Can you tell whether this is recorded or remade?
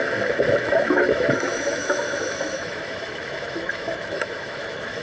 remade